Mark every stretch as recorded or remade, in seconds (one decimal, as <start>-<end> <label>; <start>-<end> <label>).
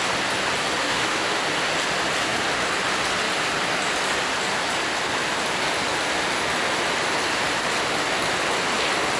0.0-0.8 recorded; 0.8-1.4 remade; 1.4-9.2 recorded